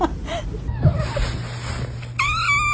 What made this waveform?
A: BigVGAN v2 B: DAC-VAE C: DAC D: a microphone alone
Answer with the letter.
D